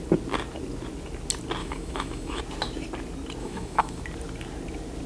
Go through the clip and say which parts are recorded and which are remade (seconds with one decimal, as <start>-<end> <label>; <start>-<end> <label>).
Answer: 0.0-1.6 recorded; 1.6-2.4 remade; 2.4-3.4 recorded; 3.4-4.0 remade; 4.0-5.1 recorded